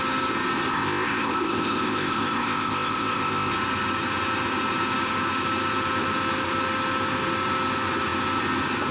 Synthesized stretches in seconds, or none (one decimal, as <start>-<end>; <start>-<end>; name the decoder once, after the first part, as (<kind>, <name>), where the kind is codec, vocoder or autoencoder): 0.7-3.5 (codec, ZipCodec)